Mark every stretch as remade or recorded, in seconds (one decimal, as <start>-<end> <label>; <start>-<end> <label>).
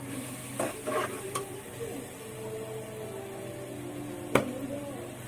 0.0-5.3 recorded